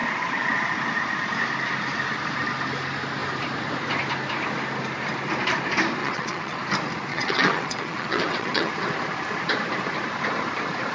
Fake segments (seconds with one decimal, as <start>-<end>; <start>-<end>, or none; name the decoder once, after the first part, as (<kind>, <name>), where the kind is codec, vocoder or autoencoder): 6.0-6.6 (vocoder, WaveNeXt); 7.1-8.7